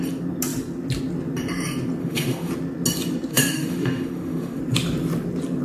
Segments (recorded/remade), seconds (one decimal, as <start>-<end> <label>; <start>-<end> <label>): 0.0-2.0 recorded; 2.0-2.5 remade; 2.5-3.3 recorded; 3.3-4.6 remade; 4.6-5.6 recorded